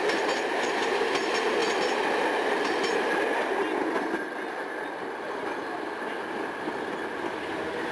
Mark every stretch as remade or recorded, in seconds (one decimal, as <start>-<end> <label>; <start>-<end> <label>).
0.0-7.9 recorded